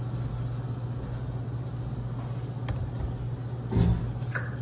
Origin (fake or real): real